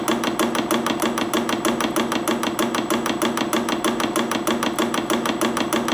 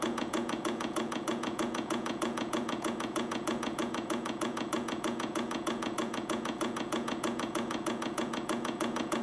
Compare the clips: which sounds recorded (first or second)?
first